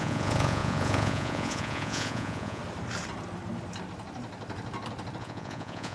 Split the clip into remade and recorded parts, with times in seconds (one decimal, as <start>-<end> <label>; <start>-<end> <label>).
0.0-2.6 remade; 2.6-5.2 recorded; 5.2-5.9 remade